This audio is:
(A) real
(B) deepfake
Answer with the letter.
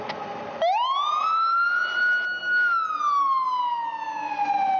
A